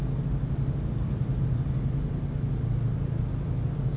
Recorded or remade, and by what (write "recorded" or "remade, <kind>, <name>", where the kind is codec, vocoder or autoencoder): recorded